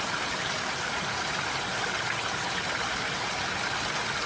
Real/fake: real